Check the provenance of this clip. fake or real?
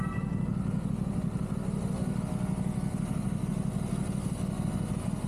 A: real